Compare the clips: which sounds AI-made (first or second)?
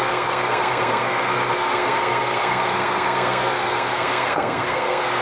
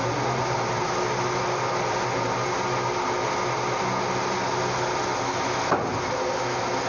first